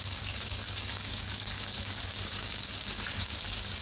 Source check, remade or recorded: remade